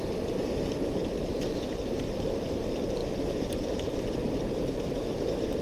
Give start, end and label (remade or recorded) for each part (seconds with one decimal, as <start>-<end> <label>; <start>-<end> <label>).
0.0-1.0 recorded; 1.0-1.9 remade; 1.9-5.6 recorded